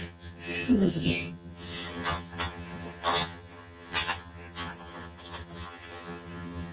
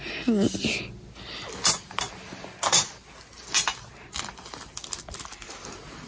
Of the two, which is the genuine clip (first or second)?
second